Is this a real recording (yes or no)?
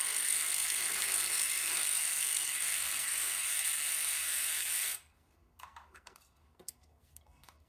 no